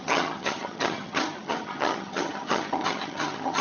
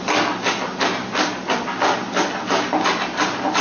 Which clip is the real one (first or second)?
second